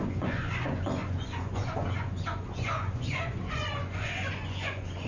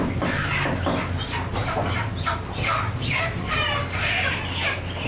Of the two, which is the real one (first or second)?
second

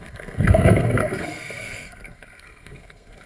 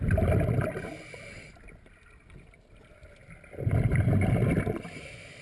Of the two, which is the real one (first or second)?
second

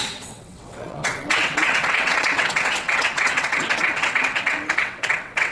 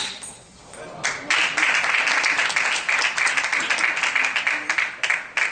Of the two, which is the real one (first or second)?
second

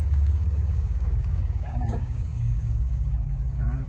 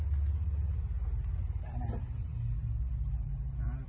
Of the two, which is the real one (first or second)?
second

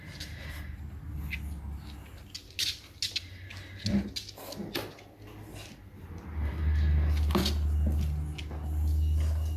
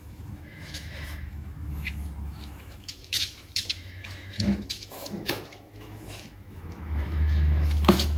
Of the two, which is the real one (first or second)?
first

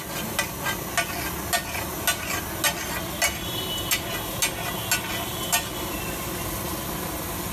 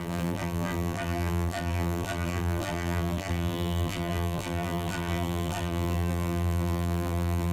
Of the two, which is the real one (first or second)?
first